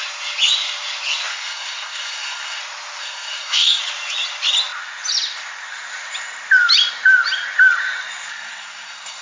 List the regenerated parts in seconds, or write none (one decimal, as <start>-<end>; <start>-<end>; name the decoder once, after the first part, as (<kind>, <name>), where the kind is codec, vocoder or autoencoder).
1.3-2.6 (codec, SNAC); 3.0-3.8; 8.3-9.2